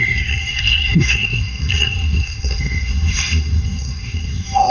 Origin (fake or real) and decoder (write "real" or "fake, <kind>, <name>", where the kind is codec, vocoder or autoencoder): fake, codec, SNAC